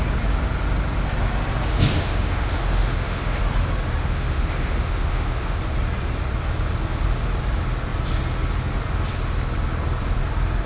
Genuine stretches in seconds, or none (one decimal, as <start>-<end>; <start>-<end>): 0.0-1.7; 3.4-4.0; 5.6-10.7